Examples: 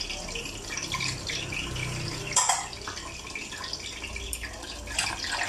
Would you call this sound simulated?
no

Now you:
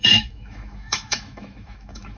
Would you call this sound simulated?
yes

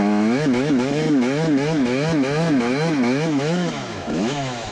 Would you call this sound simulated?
yes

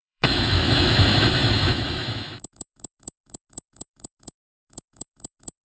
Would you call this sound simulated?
yes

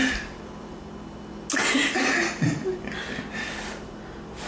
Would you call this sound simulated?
no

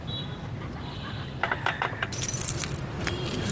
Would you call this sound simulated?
no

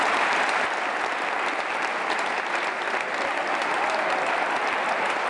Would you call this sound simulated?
no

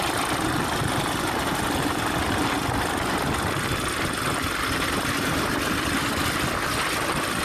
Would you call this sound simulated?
no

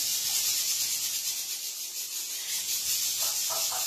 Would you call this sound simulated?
no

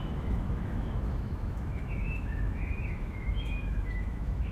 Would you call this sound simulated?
yes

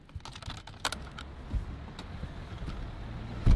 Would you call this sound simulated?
no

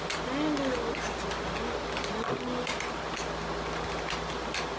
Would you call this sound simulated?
no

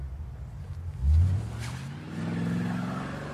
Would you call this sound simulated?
no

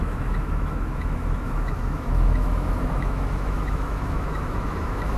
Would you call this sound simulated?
yes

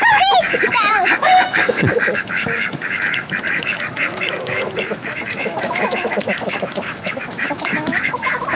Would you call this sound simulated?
yes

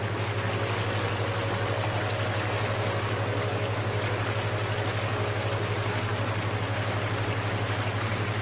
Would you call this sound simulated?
no